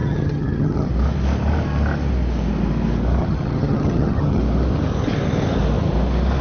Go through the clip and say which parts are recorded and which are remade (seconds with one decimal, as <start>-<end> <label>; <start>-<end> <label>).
0.0-0.9 remade; 0.9-3.2 recorded; 3.2-4.4 remade; 4.4-6.4 recorded